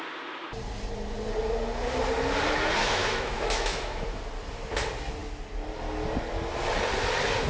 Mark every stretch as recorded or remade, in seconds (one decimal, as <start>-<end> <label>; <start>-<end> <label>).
0.0-2.8 recorded; 2.8-4.2 remade; 4.2-7.5 recorded